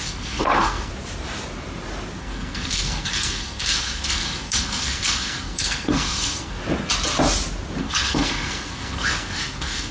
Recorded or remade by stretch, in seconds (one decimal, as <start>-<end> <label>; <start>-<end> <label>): 0.0-0.9 remade; 0.9-2.2 recorded; 2.2-6.6 remade; 6.6-7.8 recorded; 7.8-9.9 remade